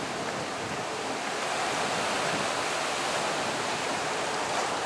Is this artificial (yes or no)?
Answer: no